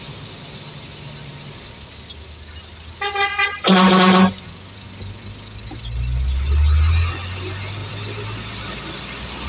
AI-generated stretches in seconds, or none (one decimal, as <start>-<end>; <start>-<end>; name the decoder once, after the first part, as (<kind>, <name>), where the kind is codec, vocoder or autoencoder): none